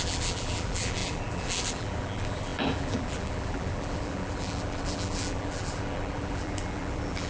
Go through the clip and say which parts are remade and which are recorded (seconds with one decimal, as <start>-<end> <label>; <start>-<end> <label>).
0.0-7.3 remade

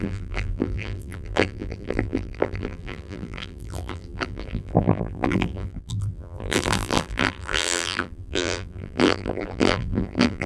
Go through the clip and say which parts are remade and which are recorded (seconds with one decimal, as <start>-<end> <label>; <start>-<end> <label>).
0.0-10.5 remade

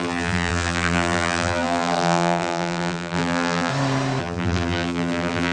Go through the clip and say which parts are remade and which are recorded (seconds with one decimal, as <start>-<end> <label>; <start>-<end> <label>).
0.0-3.7 remade; 3.7-4.2 recorded; 4.2-5.5 remade